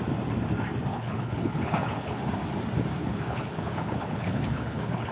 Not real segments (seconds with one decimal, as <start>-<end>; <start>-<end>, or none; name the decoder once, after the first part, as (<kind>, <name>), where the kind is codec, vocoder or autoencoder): 0.9-2.2 (codec, HILCodec); 3.0-5.1